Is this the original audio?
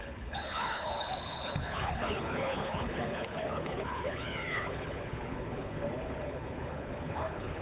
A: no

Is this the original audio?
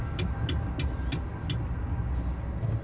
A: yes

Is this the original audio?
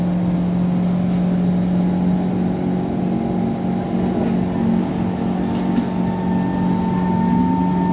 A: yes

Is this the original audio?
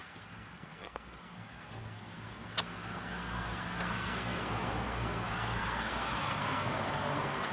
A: no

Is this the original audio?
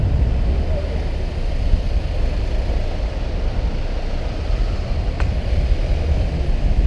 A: yes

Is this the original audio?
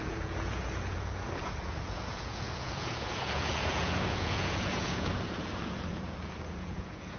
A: no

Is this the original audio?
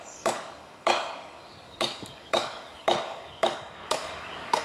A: no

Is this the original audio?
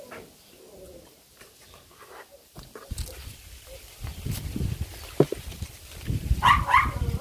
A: yes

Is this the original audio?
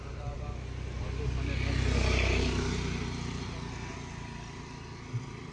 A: yes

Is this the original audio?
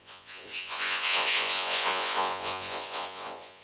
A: no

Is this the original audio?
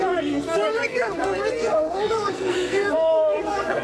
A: no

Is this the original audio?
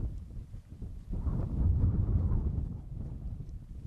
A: no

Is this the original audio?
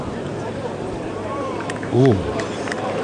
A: no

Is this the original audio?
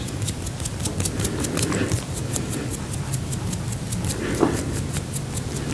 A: yes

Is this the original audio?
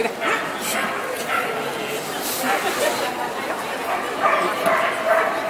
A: yes